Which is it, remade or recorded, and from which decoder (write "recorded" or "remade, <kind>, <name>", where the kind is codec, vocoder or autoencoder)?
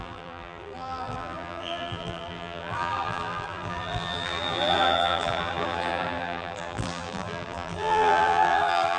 remade, vocoder, BigVGAN v2